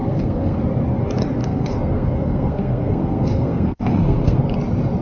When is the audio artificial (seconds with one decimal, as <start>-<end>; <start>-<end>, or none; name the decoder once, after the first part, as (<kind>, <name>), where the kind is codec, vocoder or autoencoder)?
0.0-0.6 (codec, SNAC); 1.4-4.4